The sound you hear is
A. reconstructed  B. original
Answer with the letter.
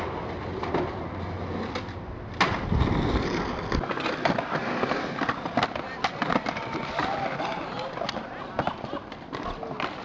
B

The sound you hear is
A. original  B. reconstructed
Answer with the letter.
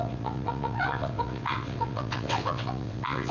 B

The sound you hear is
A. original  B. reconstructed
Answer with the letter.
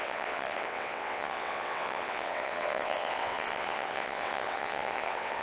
B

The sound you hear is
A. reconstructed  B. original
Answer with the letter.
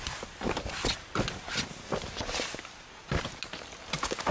B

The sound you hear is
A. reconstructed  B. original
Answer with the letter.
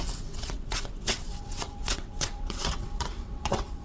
A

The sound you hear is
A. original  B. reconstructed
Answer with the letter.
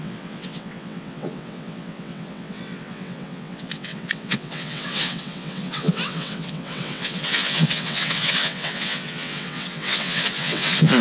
B